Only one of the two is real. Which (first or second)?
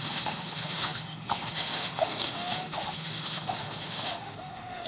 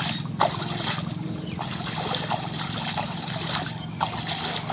second